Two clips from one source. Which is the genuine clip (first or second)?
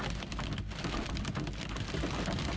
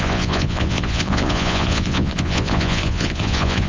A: first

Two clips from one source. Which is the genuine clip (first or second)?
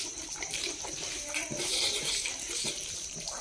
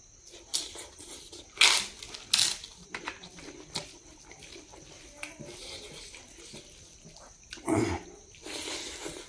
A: second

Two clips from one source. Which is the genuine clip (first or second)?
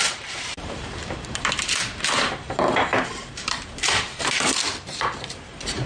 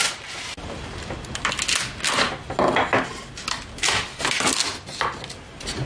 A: second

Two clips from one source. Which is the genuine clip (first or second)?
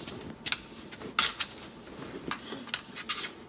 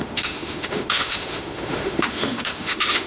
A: first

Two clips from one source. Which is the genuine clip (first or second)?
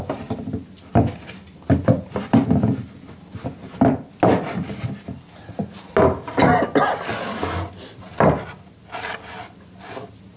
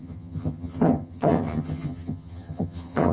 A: first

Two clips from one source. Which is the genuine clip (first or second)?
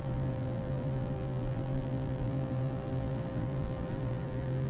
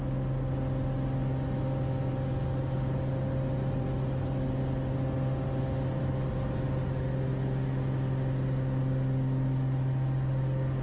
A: second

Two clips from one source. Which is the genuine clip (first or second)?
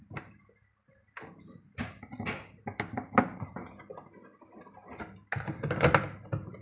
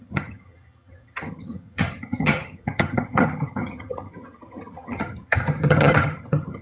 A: first